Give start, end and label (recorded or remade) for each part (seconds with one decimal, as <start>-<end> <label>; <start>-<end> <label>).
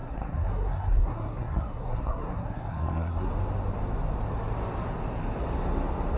0.0-3.3 remade; 3.3-6.2 recorded